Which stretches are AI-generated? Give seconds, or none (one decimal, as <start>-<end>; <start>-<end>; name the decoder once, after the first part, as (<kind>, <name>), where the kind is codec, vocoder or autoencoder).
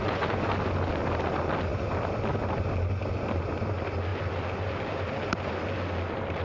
0.0-0.5 (vocoder, Vocos)